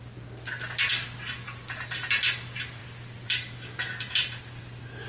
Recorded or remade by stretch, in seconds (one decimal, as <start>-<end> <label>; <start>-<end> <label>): 0.0-5.1 recorded